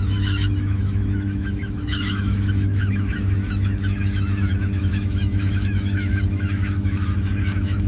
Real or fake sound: fake